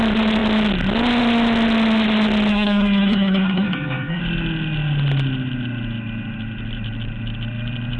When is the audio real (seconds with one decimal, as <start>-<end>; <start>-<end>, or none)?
0.0-2.5; 4.2-8.0